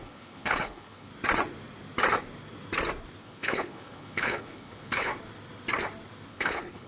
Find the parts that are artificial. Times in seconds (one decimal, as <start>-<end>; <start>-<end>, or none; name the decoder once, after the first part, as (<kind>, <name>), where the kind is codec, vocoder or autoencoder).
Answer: 0.0-1.1 (codec, HILCodec); 3.2-5.1; 6.3-6.9